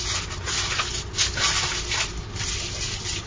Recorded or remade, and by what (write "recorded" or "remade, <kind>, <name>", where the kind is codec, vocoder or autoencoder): recorded